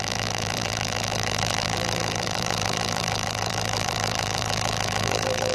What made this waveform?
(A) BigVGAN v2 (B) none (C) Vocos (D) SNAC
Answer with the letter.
A